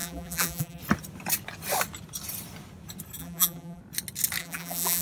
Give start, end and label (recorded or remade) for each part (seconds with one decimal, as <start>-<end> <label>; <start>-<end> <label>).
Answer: 0.0-0.8 remade; 0.8-3.2 recorded; 3.2-3.8 remade; 3.8-4.4 recorded; 4.4-5.0 remade